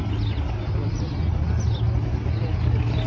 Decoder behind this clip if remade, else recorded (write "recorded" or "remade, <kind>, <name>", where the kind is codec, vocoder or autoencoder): recorded